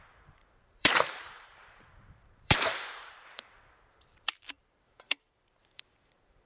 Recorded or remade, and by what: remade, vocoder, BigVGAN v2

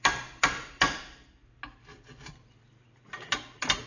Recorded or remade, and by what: recorded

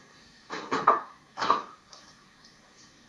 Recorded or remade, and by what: remade, codec, SNAC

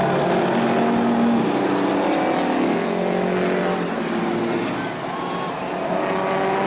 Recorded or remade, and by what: recorded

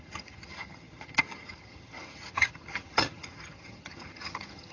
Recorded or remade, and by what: remade, vocoder, HiFi-GAN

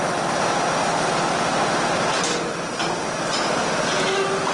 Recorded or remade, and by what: recorded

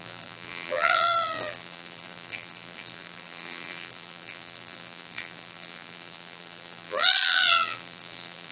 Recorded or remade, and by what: remade, vocoder, BigVGAN v2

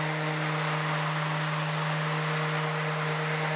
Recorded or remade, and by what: recorded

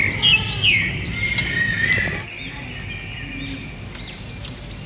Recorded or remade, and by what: recorded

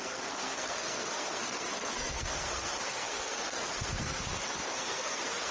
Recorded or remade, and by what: remade, codec, SNAC